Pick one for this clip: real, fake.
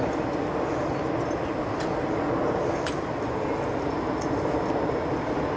real